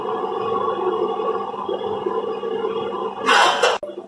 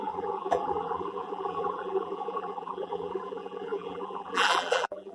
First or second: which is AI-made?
second